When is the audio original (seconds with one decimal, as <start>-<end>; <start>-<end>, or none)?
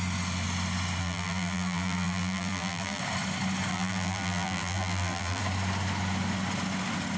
0.0-1.0; 3.0-3.7; 5.4-7.2